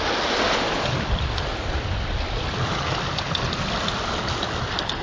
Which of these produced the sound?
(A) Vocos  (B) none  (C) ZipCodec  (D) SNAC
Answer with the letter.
B